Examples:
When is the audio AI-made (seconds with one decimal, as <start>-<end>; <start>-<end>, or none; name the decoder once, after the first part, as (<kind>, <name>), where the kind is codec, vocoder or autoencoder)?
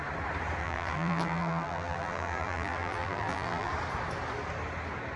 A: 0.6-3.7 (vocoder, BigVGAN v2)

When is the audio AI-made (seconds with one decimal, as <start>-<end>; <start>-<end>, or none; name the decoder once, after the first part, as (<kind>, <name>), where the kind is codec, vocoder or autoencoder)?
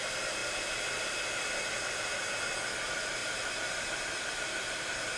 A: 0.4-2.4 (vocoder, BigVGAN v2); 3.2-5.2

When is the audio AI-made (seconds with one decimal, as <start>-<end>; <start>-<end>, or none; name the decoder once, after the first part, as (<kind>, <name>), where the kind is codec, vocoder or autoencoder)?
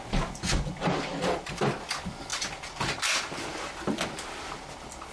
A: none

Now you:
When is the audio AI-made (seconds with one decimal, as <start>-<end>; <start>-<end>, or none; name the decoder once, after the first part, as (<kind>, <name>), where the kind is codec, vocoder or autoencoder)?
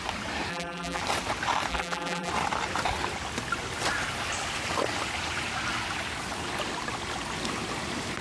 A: 0.5-1.0 (vocoder, BigVGAN v2); 1.7-2.3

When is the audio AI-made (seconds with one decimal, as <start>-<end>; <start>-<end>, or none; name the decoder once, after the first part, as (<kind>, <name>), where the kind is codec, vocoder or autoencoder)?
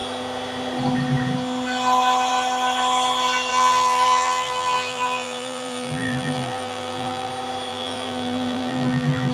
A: 3.5-7.3 (vocoder, BigVGAN v2); 7.7-9.3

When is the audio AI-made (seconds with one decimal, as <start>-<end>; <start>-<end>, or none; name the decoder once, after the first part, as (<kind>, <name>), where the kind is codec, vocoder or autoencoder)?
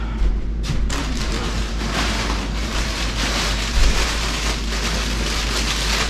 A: 1.0-3.9 (vocoder, BigVGAN v2)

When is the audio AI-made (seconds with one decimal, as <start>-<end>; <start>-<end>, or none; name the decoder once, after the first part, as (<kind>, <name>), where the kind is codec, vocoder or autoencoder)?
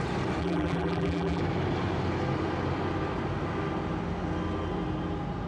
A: 0.4-1.4 (vocoder, BigVGAN v2)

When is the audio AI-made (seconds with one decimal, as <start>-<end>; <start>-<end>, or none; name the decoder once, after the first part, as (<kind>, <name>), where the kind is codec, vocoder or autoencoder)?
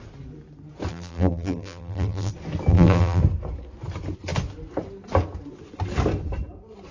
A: 0.9-2.3 (vocoder, BigVGAN v2); 2.7-3.2